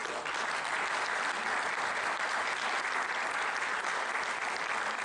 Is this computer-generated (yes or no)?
no